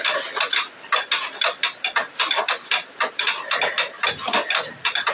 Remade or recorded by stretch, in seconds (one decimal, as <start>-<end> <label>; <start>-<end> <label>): 0.0-5.1 recorded